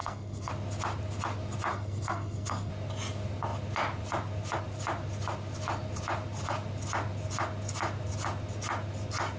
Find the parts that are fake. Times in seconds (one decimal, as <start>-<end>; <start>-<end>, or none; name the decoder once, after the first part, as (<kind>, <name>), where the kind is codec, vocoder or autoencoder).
0.0-0.5 (codec, SNAC); 1.7-2.7